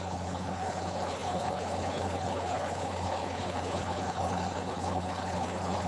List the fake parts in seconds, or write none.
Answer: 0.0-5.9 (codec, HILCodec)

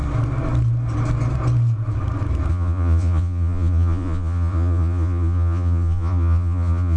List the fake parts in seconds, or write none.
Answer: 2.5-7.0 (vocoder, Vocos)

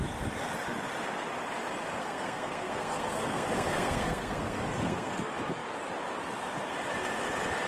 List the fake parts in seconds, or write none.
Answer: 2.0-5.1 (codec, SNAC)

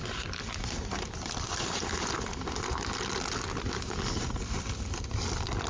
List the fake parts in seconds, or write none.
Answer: none